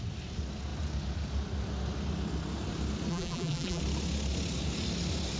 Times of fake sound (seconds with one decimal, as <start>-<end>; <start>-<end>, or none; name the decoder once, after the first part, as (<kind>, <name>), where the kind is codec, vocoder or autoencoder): 3.1-3.8 (vocoder, BigVGAN v2)